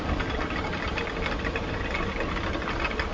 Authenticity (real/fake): real